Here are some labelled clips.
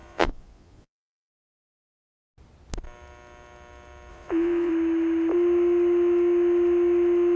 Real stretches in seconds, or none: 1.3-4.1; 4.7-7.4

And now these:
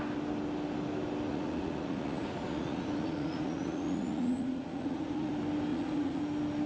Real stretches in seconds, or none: 0.0-1.3; 5.3-5.7; 6.2-6.7

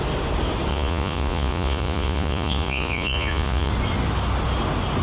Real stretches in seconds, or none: 0.0-0.7; 3.7-5.0